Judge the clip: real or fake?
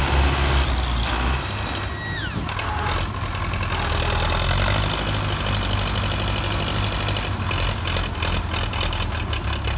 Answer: real